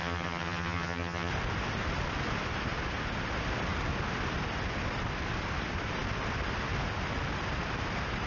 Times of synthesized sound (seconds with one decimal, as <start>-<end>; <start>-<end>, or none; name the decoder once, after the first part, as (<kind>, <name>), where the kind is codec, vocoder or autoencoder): 0.0-1.3 (vocoder, HiFi-GAN)

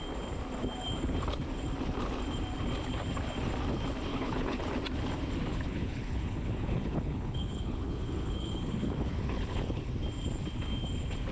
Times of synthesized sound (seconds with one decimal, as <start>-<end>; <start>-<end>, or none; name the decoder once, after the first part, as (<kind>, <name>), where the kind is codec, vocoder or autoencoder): 4.1-4.6 (codec, HILCodec); 5.5-9.9

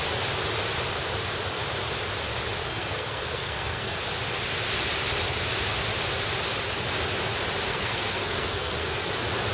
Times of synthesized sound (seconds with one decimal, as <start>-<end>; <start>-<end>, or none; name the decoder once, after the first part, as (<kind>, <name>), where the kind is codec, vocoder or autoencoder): 2.6-4.0 (codec, SNAC); 7.7-9.1

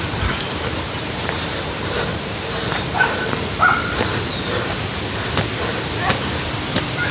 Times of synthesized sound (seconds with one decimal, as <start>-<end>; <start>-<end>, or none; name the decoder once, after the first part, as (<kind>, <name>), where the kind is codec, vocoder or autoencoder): 0.0-3.7 (vocoder, BigVGAN v2); 6.1-7.1

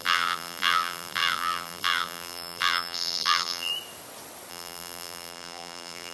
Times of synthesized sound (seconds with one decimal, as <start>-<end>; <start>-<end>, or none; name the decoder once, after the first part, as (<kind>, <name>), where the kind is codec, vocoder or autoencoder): 0.0-3.7 (vocoder, BigVGAN v2); 4.5-6.1